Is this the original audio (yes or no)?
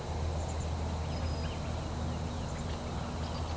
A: yes